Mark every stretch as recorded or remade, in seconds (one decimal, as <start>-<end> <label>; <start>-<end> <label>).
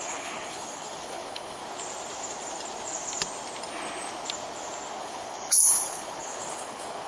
0.0-1.6 remade; 1.6-5.0 recorded; 5.0-7.1 remade